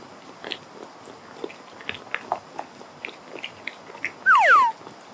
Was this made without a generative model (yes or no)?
yes